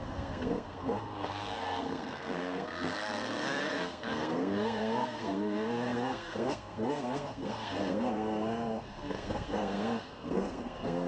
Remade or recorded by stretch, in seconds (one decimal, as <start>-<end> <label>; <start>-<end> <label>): 0.0-11.1 remade